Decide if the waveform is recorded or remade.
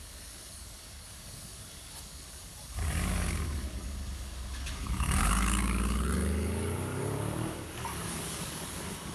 remade